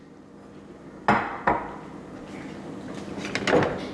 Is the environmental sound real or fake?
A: real